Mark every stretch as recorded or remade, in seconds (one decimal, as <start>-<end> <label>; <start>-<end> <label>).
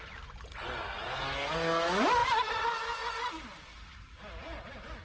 0.0-5.0 recorded